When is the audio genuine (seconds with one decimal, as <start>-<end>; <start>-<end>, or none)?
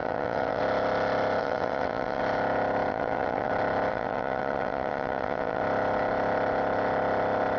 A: 0.6-1.4; 2.2-2.9; 3.5-3.9; 5.6-7.6